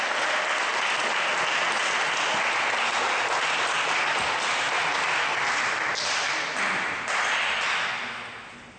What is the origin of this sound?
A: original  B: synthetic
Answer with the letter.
A